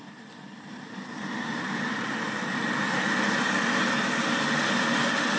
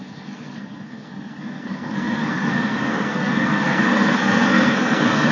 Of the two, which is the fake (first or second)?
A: second